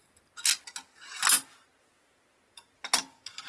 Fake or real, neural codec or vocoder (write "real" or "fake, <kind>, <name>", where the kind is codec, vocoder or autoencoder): real